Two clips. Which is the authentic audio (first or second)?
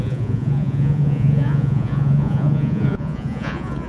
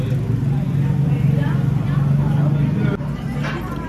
second